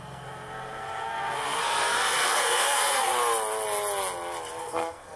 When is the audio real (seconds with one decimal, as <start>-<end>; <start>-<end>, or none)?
3.1-4.6